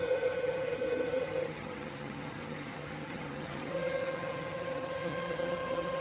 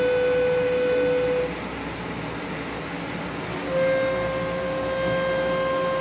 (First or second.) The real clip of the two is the second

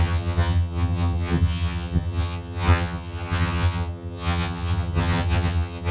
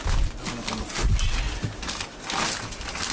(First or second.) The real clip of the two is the second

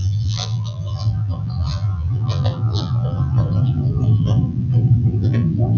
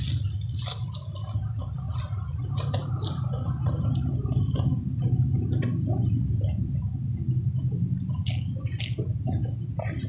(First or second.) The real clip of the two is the second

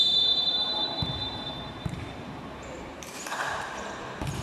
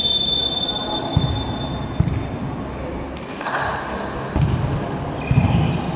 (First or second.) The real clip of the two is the second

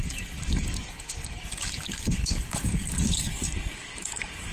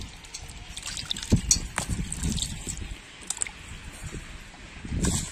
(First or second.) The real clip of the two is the second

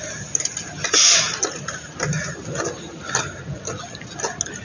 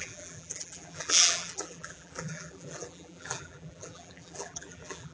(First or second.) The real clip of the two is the first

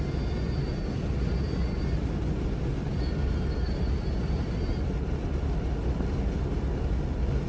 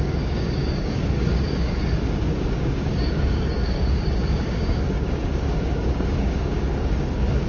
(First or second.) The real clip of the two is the first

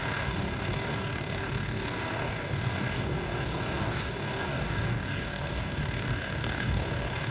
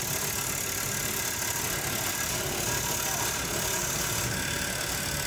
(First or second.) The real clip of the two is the second